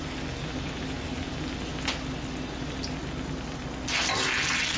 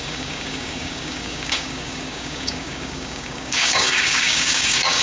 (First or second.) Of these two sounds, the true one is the first